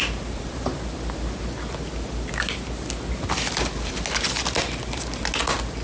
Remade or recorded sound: recorded